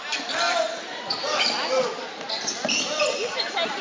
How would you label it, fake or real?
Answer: real